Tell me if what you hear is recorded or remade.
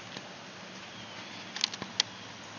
recorded